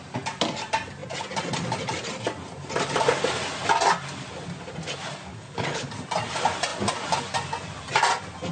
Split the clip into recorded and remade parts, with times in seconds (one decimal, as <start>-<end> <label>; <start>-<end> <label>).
0.0-5.3 recorded; 5.3-5.9 remade; 5.9-8.5 recorded